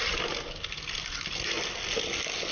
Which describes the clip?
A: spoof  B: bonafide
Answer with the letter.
B